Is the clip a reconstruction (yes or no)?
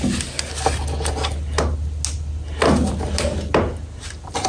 no